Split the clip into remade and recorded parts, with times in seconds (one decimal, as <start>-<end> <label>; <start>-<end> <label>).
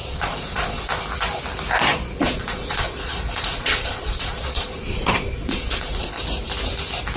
0.0-0.9 remade; 0.9-1.9 recorded; 1.9-6.2 remade; 6.2-7.2 recorded